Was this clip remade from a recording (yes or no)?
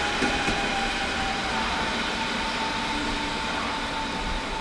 no